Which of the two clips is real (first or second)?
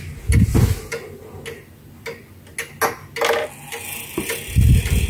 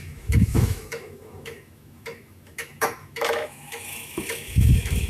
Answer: first